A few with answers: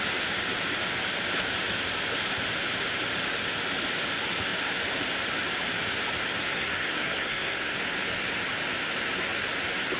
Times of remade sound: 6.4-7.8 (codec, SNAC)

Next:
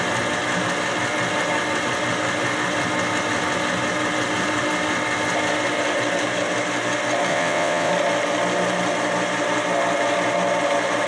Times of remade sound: 7.3-7.9 (vocoder, WaveNeXt)

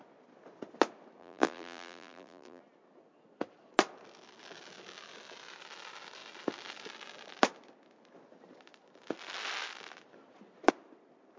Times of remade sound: 1.2-2.6 (vocoder, BigVGAN v2)

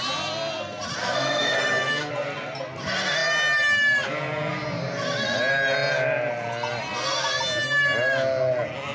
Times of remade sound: 1.0-2.1 (codec, SNAC)

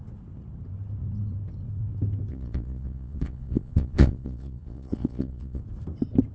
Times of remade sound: 2.3-5.6 (vocoder, Vocos)

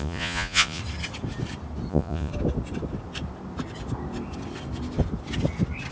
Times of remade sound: 0.0-0.8 (vocoder, Vocos); 1.9-2.3

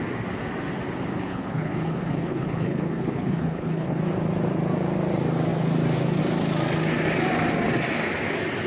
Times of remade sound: 1.1-4.0 (codec, HILCodec)

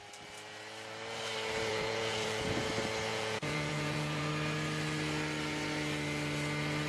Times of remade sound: 1.7-2.7 (vocoder, Vocos); 3.1-4.3